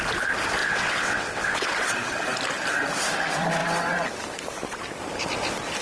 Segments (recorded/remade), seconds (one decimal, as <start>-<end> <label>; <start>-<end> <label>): 0.0-0.6 recorded; 0.6-1.7 remade; 1.7-5.8 recorded